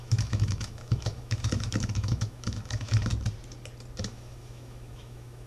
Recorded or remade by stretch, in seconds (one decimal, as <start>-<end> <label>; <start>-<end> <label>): 0.0-3.1 remade; 3.1-4.0 recorded; 4.0-5.5 remade